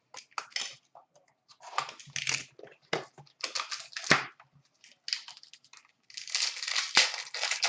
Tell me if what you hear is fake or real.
real